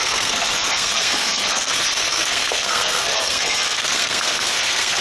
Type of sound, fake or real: fake